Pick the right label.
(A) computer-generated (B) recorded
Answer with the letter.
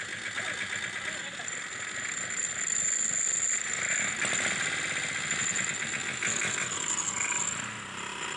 B